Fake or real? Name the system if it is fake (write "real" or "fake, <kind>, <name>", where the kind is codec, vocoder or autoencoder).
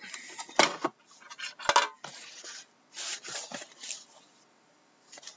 real